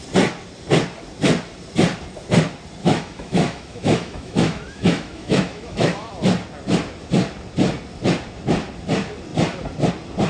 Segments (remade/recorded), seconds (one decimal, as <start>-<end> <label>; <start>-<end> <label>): 0.0-2.8 recorded; 2.8-6.1 remade; 6.1-10.3 recorded